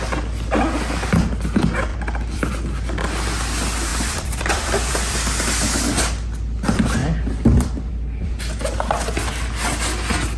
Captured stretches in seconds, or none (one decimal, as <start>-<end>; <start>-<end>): 0.0-1.9; 2.5-3.9; 4.9-10.4